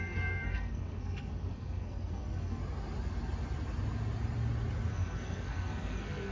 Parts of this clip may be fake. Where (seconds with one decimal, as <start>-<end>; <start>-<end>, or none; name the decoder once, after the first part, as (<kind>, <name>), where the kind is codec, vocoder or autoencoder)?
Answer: 0.0-2.6 (codec, SNAC); 4.9-6.3